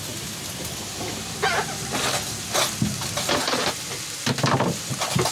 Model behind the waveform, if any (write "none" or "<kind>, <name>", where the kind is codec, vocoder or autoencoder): none